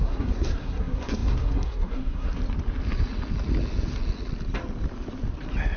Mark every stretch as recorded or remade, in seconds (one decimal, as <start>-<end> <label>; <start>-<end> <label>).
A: 0.0-2.4 remade; 2.4-5.8 recorded

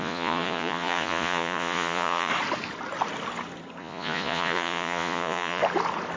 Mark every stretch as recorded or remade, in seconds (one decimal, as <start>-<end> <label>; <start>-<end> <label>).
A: 0.0-2.3 remade; 2.3-3.8 recorded; 3.8-5.6 remade; 5.6-6.2 recorded

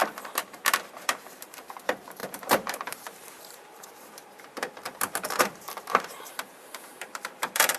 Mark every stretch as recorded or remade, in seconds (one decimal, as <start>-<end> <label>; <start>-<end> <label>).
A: 0.0-7.8 remade

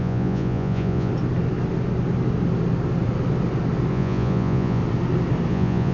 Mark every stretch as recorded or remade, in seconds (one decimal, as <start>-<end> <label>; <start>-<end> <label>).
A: 0.0-1.1 remade; 1.1-3.9 recorded; 3.9-4.8 remade; 4.8-5.5 recorded; 5.5-5.9 remade